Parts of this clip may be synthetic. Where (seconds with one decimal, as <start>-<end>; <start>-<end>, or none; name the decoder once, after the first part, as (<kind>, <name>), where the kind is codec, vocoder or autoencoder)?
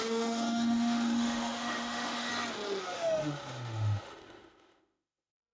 0.0-2.3 (autoencoder, DAC-VAE); 2.8-5.5